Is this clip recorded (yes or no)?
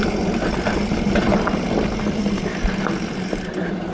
no